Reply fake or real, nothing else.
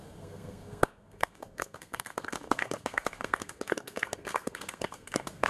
fake